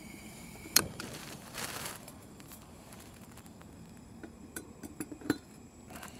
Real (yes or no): no